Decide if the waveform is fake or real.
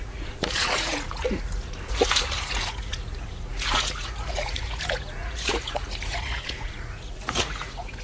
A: fake